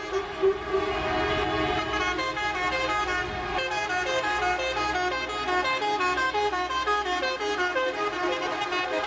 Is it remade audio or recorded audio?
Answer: recorded